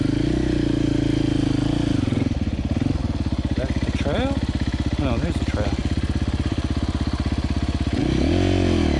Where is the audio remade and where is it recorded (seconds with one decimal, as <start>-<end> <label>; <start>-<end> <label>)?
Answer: 0.0-5.8 recorded; 5.8-8.0 remade; 8.0-9.0 recorded